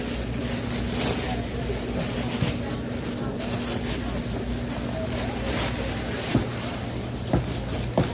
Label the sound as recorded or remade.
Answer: recorded